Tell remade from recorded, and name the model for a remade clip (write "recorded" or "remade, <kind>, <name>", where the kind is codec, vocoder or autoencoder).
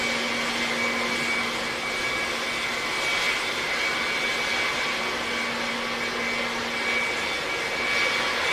recorded